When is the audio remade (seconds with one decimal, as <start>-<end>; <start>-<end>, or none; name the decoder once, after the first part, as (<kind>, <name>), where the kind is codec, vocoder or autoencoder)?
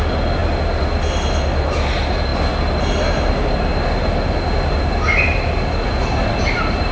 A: none